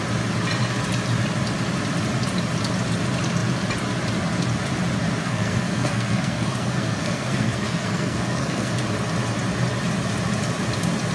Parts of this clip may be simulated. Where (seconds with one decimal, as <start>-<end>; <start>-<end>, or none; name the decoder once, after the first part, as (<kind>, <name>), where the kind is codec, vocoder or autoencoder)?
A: 5.2-8.7 (codec, SNAC)